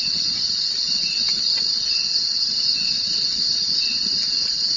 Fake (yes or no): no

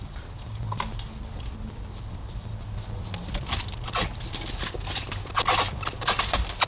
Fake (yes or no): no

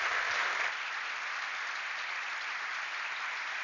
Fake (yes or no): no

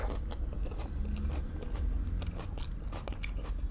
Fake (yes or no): no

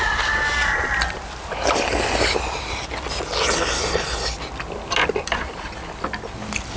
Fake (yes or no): no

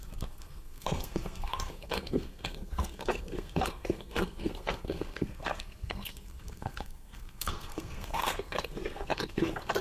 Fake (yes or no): yes